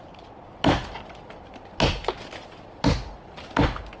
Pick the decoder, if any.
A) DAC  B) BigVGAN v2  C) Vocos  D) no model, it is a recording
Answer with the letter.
B